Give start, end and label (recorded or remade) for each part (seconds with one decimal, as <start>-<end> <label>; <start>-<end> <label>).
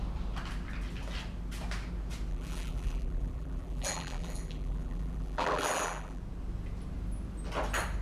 0.0-2.3 recorded; 2.3-6.2 remade; 6.2-8.0 recorded